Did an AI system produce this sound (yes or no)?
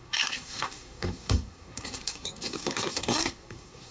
yes